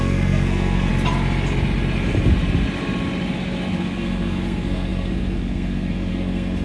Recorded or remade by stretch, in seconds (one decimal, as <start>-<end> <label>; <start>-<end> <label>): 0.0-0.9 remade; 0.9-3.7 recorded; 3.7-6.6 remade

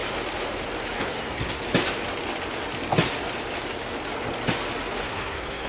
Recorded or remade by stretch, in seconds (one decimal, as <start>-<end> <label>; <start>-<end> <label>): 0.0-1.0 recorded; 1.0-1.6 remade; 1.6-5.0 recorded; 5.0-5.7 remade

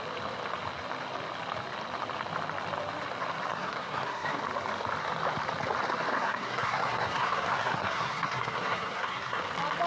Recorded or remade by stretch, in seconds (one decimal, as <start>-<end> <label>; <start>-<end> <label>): 0.0-3.5 recorded; 3.5-4.4 remade; 4.4-6.1 recorded; 6.1-9.4 remade; 9.4-9.9 recorded

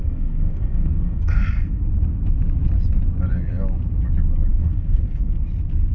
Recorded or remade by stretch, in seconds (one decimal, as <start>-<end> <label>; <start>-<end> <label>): 0.0-1.8 remade; 1.8-4.5 recorded; 4.5-5.3 remade; 5.3-5.9 recorded

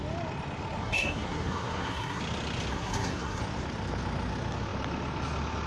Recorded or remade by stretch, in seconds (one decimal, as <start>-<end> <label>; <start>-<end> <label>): 0.0-0.8 recorded; 0.8-2.2 remade; 2.2-2.7 recorded; 2.7-3.4 remade; 3.4-5.7 recorded

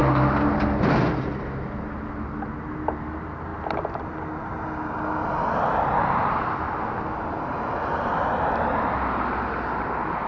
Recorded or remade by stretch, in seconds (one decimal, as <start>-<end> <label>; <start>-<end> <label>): 0.0-10.3 recorded